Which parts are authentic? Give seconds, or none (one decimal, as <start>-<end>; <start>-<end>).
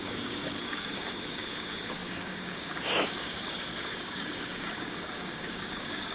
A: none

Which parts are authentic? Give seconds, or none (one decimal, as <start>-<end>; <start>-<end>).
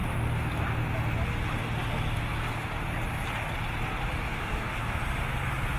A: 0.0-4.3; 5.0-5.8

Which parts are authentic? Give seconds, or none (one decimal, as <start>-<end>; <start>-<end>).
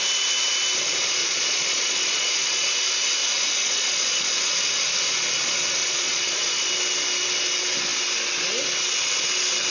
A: 0.0-1.2; 2.7-3.6; 4.4-5.8; 6.7-9.7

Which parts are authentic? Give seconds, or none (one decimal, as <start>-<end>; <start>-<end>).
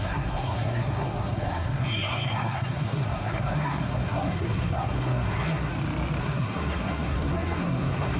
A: 5.7-6.2